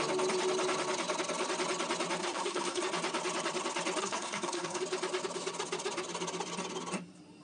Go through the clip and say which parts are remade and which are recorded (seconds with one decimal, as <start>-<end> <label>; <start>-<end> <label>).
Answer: 0.0-2.2 recorded; 2.2-2.8 remade; 2.8-4.0 recorded; 4.0-4.8 remade; 4.8-7.4 recorded